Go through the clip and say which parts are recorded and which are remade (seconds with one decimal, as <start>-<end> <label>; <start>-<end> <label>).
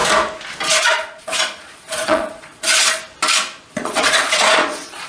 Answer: 0.0-0.7 recorded; 0.7-3.0 remade; 3.0-3.7 recorded; 3.7-5.1 remade